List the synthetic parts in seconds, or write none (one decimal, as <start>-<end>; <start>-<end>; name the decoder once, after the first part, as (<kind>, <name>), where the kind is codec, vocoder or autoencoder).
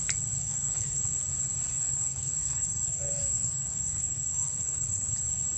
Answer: 0.4-1.0 (codec, SNAC); 1.7-5.1